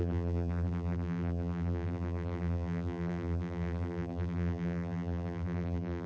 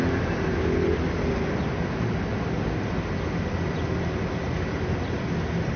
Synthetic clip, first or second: first